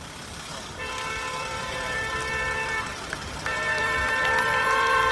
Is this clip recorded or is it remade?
remade